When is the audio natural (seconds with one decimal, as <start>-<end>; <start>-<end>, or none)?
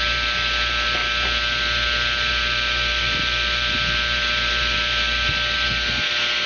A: 0.0-6.5